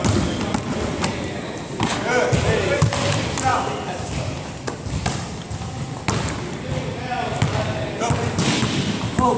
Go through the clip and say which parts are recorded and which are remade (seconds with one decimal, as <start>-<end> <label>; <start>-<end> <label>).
0.0-9.4 recorded